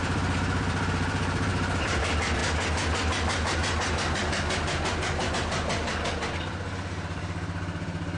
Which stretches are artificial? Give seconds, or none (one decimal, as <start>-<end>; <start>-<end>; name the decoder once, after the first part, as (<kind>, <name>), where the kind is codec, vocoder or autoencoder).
0.0-2.4 (vocoder, BigVGAN v2); 5.3-8.2